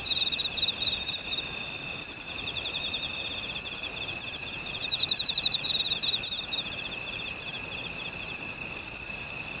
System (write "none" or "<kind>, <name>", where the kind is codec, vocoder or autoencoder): vocoder, BigVGAN v2